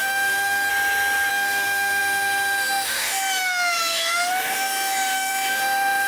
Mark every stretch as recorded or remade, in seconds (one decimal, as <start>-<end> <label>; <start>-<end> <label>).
0.0-0.7 remade; 0.7-1.3 recorded; 1.3-6.1 remade